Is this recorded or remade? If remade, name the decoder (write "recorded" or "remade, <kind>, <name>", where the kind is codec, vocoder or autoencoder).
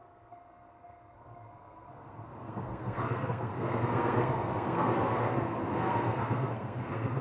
remade, codec, SNAC